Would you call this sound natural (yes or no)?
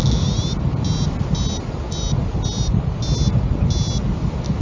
yes